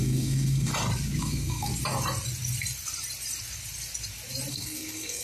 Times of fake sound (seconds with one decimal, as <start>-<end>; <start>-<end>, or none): 0.0-0.7; 1.2-1.7; 4.5-5.2